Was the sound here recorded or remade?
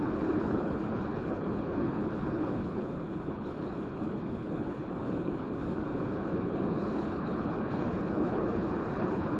remade